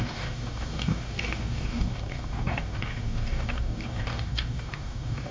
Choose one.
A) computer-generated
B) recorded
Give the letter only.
A